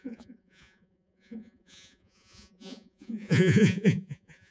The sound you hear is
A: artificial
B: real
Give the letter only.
A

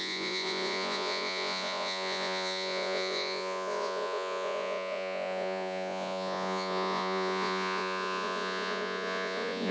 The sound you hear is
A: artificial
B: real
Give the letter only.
A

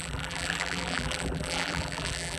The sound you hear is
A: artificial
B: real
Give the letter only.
A